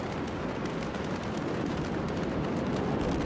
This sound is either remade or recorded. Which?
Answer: recorded